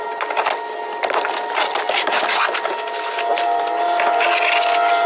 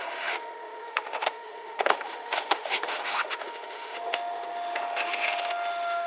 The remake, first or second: second